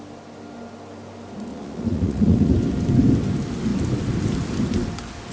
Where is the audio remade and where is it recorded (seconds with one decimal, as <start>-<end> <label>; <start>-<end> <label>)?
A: 0.0-1.5 recorded; 1.5-2.5 remade; 2.5-5.3 recorded